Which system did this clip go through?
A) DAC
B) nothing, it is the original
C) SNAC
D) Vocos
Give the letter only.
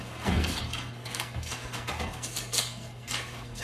C